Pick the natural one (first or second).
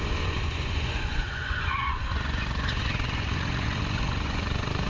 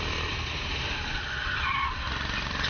second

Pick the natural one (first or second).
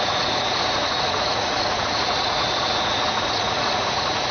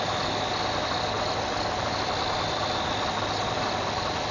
second